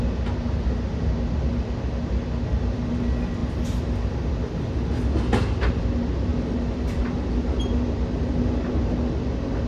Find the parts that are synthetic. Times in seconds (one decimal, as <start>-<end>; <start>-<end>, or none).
none